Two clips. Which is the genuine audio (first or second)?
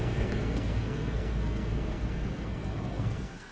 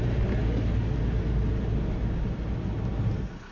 second